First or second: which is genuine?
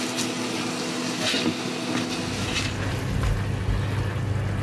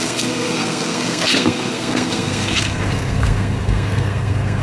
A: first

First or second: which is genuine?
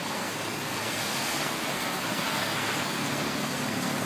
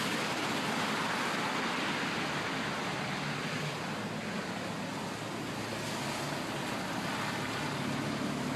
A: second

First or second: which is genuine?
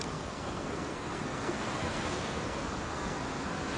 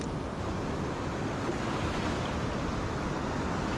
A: second